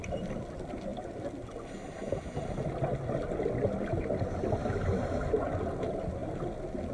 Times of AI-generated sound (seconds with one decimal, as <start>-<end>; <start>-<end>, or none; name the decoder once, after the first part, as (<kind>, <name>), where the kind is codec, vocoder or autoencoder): none